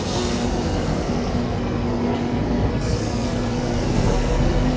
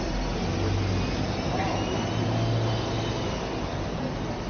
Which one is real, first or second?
second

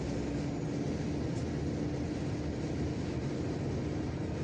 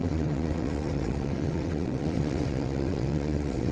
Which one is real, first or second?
first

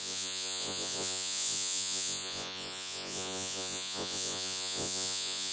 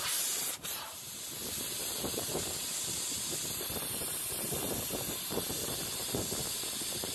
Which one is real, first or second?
second